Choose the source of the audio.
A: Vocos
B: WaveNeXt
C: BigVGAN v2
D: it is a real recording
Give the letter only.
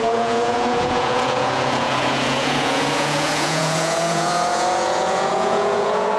A